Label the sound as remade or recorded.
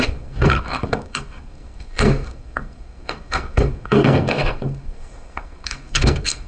remade